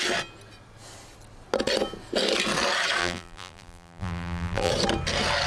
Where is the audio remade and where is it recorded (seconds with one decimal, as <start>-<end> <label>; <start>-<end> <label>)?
0.0-3.0 recorded; 3.0-4.7 remade; 4.7-5.5 recorded

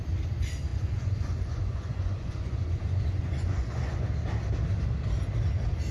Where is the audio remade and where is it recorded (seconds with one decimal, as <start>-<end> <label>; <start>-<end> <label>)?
0.0-0.7 recorded; 0.7-4.1 remade; 4.1-5.9 recorded

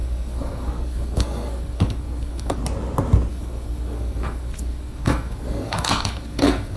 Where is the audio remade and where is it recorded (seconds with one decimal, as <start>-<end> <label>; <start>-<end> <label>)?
0.0-2.6 remade; 2.6-3.3 recorded; 3.3-6.8 remade